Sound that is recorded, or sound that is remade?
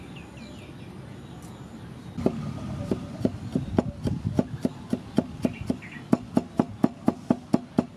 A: recorded